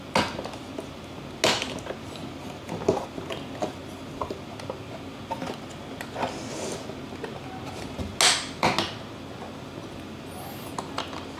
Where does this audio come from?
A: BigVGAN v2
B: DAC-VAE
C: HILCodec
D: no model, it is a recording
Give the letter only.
D